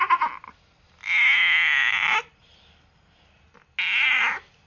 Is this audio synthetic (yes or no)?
no